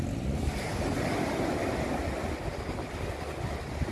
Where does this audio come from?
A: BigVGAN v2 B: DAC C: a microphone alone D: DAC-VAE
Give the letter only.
C